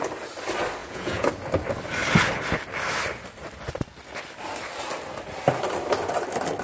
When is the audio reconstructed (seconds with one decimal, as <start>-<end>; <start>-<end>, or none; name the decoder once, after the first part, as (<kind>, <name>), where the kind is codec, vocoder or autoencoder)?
0.8-1.3 (vocoder, Vocos)